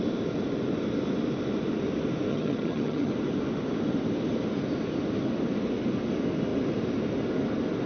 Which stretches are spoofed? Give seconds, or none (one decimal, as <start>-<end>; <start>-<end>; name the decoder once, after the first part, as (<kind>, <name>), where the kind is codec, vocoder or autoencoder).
2.3-3.1 (vocoder, HiFi-GAN)